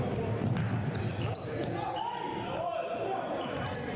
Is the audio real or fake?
real